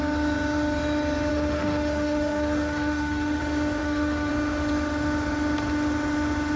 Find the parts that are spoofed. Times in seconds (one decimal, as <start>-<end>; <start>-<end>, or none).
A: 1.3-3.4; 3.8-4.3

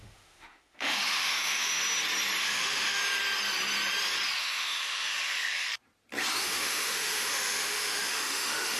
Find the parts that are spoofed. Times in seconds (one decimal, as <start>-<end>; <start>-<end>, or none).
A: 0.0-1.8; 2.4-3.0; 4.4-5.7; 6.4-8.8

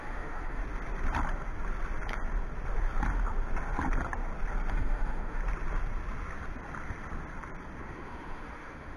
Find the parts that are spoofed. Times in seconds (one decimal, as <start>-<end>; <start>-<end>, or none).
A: 0.0-0.6; 4.7-5.4; 7.8-9.0

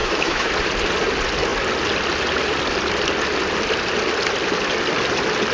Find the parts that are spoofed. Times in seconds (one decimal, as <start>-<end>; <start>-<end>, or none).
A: 0.0-0.5

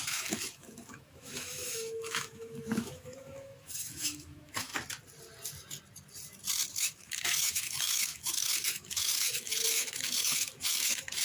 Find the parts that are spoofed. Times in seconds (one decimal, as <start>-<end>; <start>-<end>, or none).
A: 0.0-4.7; 6.7-11.2

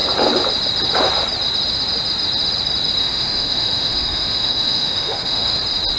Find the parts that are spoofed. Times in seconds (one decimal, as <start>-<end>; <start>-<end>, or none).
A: 3.0-5.6